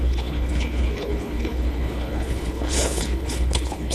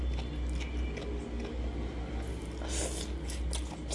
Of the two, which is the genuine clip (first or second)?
second